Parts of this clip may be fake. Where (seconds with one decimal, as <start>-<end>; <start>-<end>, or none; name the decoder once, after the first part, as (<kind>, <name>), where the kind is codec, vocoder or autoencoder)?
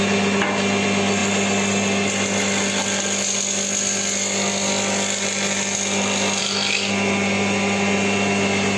none